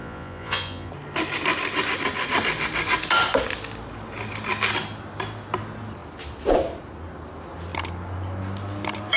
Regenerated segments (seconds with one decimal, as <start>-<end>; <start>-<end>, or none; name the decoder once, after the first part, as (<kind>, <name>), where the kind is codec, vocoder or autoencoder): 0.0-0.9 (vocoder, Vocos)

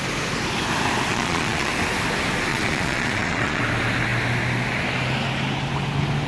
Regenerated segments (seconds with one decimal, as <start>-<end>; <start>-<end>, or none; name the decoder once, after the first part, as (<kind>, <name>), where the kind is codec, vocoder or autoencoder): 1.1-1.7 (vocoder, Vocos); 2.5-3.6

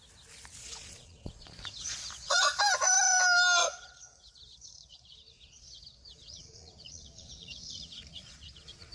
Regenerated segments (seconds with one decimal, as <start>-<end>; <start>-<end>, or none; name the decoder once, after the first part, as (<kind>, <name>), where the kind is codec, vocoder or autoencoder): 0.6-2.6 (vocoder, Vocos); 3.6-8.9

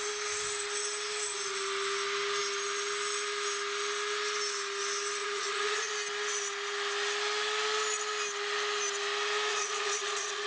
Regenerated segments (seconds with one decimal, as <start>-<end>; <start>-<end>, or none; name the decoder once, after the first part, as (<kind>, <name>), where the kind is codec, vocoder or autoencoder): 5.2-5.9 (vocoder, Vocos); 9.5-10.5